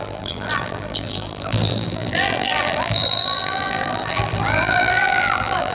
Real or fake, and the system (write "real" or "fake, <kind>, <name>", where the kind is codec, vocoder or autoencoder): fake, vocoder, BigVGAN v2